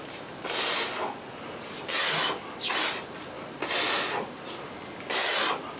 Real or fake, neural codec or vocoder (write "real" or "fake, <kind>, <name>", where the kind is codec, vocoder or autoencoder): real